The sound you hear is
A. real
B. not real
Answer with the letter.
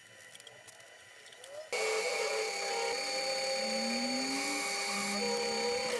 A